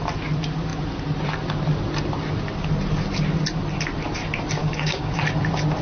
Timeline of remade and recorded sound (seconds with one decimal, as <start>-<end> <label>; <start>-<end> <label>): 0.0-4.6 recorded; 4.6-5.2 remade; 5.2-5.8 recorded